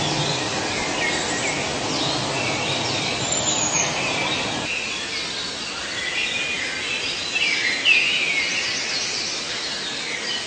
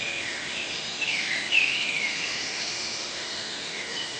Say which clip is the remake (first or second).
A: second